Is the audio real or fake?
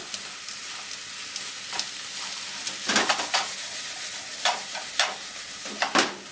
real